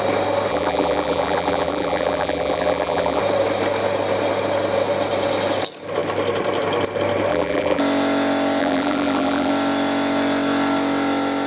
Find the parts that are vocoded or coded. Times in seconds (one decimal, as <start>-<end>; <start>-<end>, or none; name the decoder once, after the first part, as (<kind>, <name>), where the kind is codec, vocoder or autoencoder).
0.5-3.2 (vocoder, BigVGAN v2); 7.3-7.8; 8.6-9.5